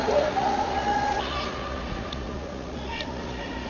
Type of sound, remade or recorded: remade